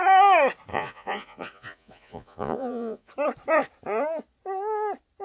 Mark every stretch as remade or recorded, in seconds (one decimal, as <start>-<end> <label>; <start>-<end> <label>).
0.0-0.7 recorded; 0.7-3.1 remade; 3.1-5.2 recorded